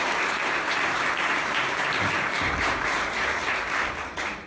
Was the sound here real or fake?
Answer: fake